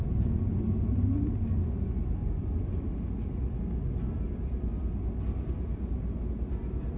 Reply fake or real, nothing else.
real